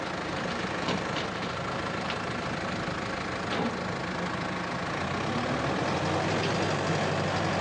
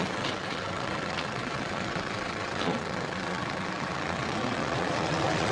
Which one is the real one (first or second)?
first